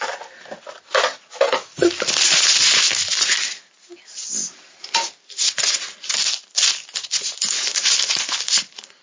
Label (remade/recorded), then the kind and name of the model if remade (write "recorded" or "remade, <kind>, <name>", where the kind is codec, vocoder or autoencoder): recorded